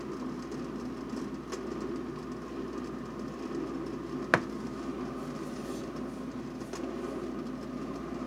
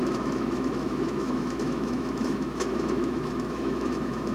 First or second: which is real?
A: first